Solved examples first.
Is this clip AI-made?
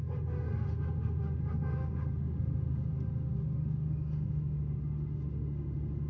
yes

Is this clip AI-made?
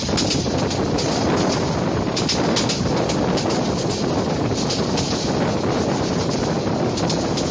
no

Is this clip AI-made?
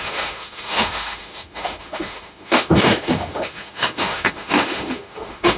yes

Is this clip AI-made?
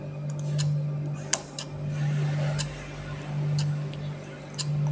no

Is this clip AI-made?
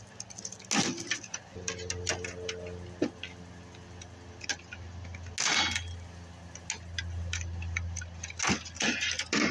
no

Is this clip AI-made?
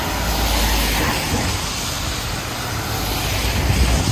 no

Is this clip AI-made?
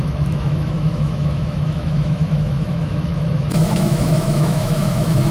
yes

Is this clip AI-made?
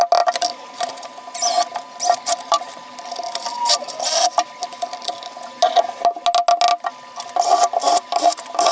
no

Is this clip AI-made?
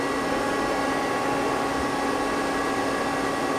no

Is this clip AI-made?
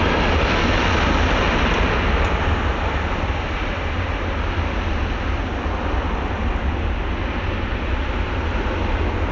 no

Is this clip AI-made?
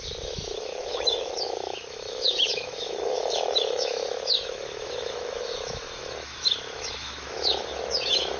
yes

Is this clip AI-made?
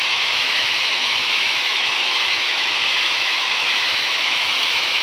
yes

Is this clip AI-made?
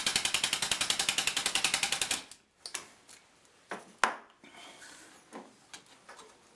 no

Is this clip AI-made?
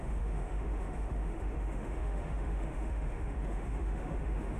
yes